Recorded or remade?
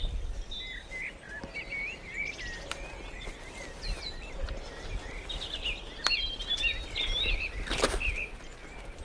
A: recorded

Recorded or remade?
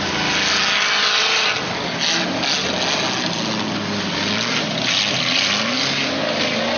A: recorded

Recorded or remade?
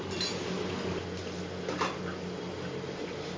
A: recorded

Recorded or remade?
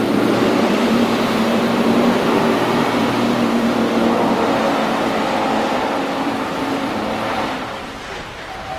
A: remade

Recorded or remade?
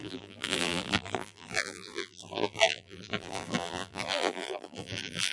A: remade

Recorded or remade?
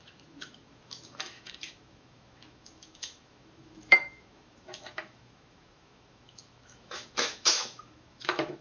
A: remade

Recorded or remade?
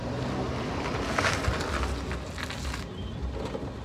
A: recorded